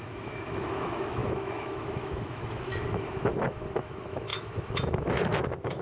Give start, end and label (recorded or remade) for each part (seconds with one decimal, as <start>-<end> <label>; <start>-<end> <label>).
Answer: 0.0-5.8 remade